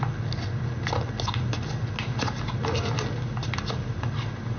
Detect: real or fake real